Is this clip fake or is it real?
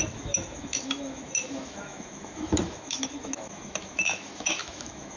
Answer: fake